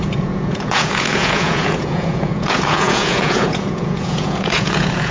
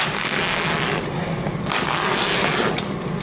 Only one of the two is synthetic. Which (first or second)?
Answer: first